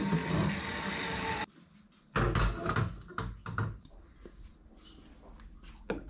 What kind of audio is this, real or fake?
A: real